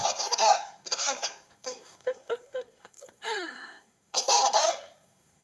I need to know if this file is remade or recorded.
remade